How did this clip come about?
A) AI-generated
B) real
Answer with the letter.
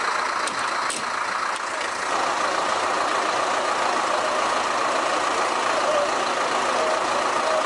B